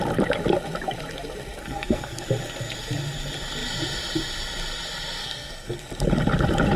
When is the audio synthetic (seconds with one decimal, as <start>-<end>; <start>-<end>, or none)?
1.6-2.2; 5.2-5.8